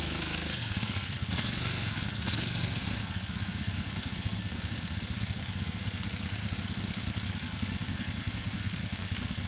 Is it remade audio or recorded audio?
remade